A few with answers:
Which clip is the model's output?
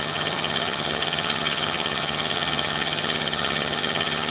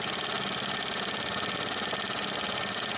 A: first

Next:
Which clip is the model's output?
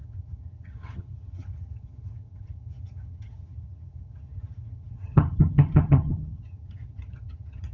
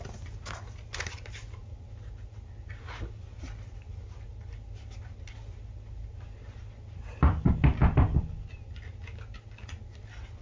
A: first